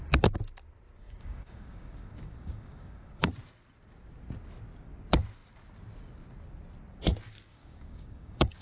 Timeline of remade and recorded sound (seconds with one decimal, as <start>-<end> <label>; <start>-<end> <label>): 0.0-1.0 recorded; 1.0-3.3 remade; 3.3-7.5 recorded; 7.5-8.6 remade